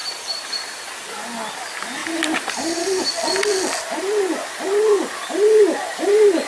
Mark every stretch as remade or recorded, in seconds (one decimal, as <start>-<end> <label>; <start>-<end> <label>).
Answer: 0.0-0.6 remade; 0.6-2.0 recorded; 2.0-3.1 remade; 3.1-6.5 recorded